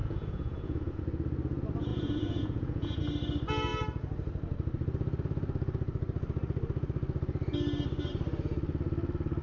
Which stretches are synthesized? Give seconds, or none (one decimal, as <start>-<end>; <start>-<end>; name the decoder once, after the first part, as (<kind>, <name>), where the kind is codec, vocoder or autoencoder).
0.0-1.0 (vocoder, Vocos); 1.9-3.0